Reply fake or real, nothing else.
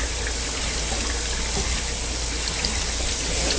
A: real